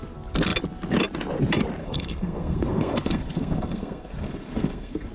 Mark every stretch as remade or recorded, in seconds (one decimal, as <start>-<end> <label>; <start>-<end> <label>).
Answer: 0.0-1.8 recorded; 1.8-5.1 remade